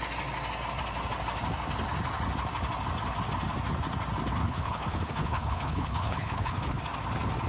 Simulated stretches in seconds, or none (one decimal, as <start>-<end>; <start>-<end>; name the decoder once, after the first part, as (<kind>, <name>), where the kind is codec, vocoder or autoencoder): 4.4-6.8 (codec, HILCodec)